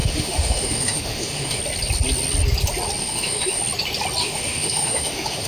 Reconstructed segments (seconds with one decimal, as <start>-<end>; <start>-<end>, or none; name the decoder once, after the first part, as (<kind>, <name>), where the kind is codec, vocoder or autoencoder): 0.0-1.6 (autoencoder, DAC-VAE); 3.0-3.6; 4.2-5.5